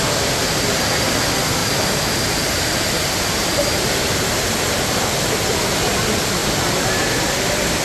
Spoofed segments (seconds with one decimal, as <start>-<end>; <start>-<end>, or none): 0.4-0.9; 1.6-5.1; 6.4-7.3